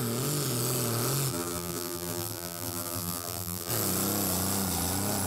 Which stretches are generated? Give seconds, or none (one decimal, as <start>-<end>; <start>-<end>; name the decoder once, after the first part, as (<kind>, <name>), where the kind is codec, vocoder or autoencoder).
1.3-3.7 (vocoder, BigVGAN v2)